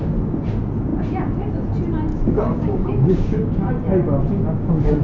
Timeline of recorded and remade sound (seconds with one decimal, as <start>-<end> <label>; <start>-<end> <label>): 0.0-2.1 recorded; 2.1-3.7 remade; 3.7-5.0 recorded